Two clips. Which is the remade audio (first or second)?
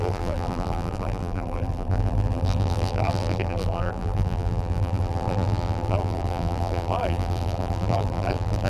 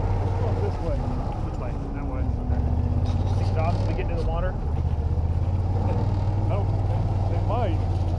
first